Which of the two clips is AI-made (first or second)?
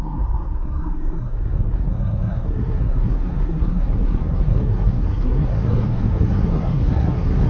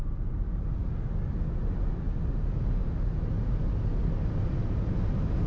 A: first